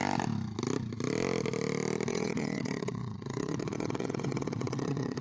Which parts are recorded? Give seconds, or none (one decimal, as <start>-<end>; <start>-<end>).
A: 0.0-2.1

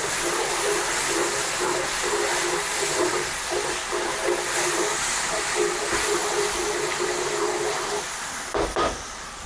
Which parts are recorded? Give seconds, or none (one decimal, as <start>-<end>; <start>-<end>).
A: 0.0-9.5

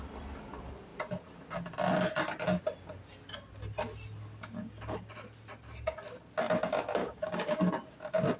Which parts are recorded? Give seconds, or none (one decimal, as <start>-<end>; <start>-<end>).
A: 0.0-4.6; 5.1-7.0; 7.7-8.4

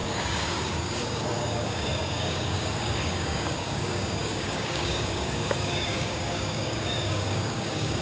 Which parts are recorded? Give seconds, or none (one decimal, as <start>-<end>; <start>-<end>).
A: none